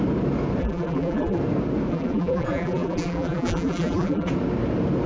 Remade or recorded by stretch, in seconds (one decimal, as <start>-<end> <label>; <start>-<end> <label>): 0.0-0.6 recorded; 0.6-1.4 remade; 1.4-1.9 recorded; 1.9-4.3 remade; 4.3-5.1 recorded